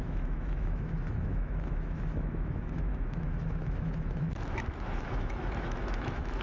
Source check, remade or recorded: remade